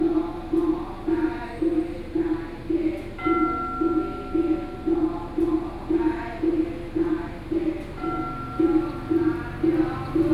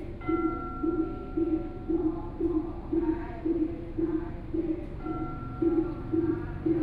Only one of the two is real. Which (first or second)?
first